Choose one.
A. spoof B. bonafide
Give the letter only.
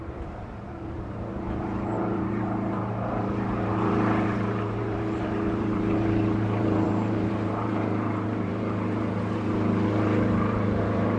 A